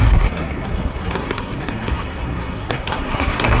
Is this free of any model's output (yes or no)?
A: no